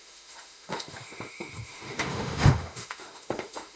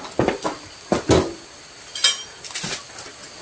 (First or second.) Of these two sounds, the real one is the second